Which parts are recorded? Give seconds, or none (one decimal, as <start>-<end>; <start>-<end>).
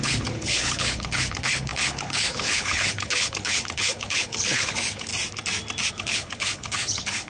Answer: 5.1-5.9